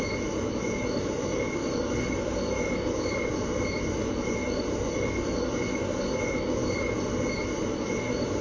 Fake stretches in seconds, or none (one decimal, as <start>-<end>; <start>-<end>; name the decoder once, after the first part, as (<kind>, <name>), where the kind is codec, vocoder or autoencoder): none